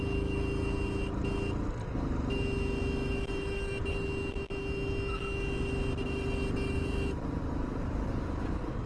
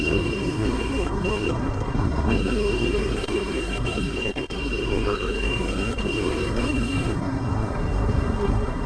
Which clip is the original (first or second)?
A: first